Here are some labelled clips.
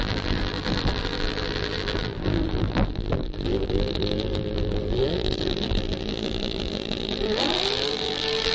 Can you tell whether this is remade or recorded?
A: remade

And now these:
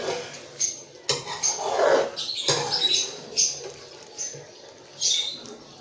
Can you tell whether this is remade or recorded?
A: recorded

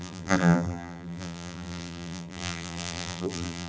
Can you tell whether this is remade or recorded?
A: remade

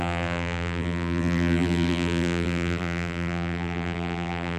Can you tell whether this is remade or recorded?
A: remade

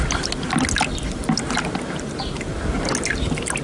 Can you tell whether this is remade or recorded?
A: recorded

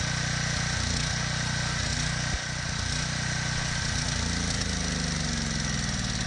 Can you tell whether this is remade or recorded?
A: recorded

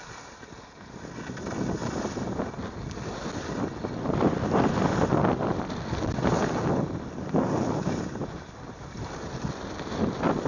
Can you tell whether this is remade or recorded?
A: recorded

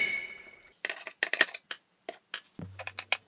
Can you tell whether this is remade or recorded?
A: recorded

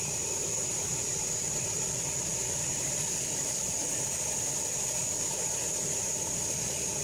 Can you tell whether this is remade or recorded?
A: recorded